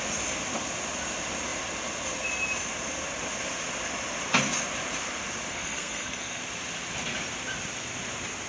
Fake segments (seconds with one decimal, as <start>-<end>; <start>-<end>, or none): 5.5-6.4